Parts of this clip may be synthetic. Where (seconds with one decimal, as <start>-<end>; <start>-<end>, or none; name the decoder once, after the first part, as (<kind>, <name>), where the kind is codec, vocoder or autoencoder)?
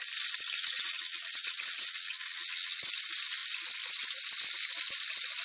0.6-2.9 (vocoder, Vocos)